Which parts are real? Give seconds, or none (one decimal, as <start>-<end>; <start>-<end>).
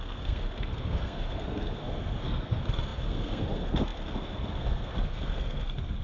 none